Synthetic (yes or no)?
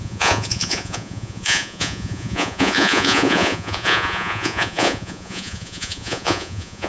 yes